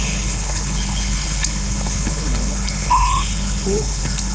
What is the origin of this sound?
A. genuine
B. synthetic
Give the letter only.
B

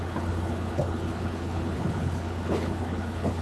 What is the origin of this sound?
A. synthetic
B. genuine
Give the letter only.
A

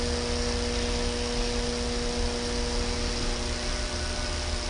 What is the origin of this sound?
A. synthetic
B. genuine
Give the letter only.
B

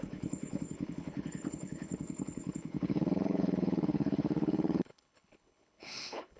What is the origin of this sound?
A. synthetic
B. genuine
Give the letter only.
A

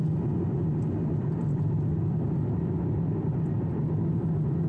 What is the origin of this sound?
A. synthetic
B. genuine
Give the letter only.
B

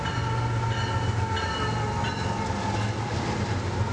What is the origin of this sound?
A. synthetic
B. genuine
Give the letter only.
B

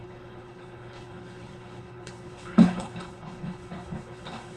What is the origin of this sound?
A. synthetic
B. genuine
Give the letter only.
A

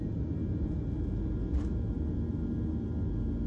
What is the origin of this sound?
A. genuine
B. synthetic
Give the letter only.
A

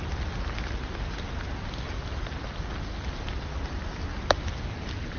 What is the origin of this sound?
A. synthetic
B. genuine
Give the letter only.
B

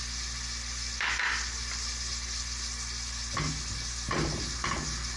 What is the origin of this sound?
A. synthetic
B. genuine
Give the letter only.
B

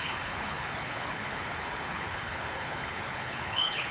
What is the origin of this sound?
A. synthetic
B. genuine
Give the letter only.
A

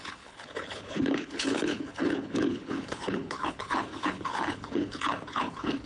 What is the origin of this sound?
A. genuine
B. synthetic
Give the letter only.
B